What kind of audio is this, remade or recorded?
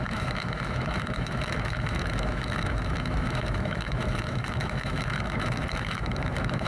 remade